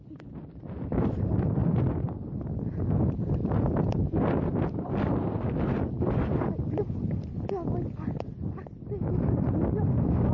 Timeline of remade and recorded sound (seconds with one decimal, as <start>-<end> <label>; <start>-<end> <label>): 0.0-10.3 recorded